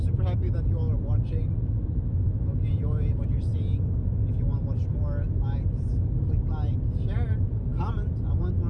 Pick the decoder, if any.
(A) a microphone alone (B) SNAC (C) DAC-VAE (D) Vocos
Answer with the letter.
A